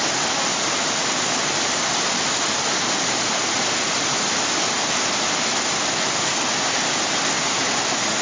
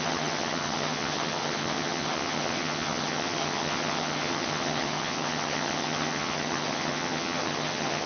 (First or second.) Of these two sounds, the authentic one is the first